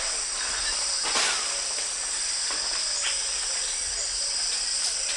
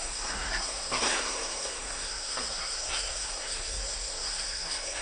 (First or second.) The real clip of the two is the first